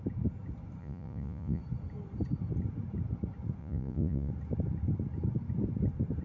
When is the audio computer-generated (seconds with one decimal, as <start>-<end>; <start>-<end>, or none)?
0.8-1.6; 3.6-4.3